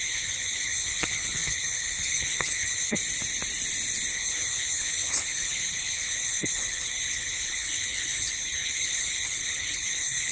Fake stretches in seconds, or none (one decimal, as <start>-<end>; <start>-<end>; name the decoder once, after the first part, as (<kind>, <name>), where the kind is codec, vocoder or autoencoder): 0.0-3.0 (codec, HILCodec); 4.1-10.3